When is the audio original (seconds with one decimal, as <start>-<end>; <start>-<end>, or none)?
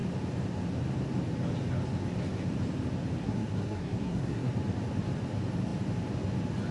0.0-3.2; 4.5-6.7